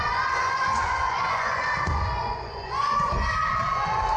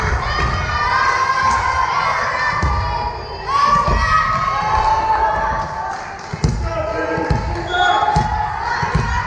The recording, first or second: second